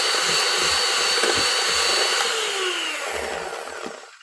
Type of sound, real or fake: real